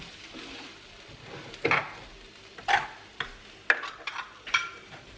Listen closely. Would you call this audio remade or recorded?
recorded